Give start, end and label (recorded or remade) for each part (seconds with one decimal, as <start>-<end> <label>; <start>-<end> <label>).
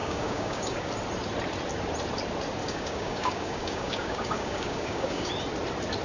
0.0-0.9 remade; 0.9-2.6 recorded; 2.6-5.3 remade; 5.3-6.0 recorded